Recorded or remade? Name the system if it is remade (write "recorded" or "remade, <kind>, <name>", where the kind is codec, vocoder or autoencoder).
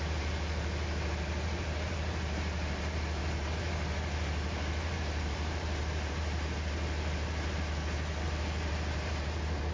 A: remade, vocoder, BigVGAN v2